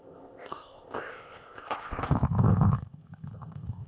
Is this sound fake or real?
fake